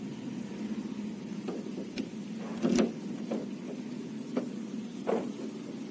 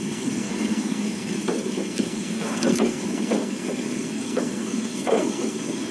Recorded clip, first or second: first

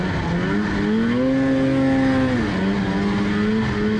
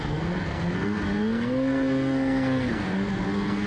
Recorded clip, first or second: first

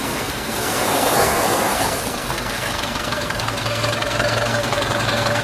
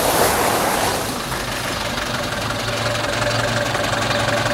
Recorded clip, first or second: second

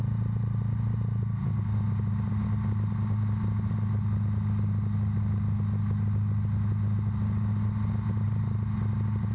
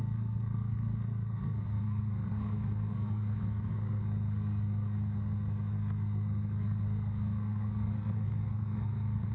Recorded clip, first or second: first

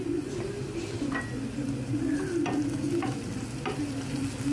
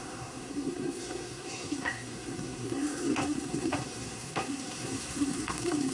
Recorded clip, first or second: first